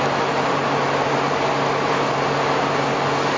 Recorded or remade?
recorded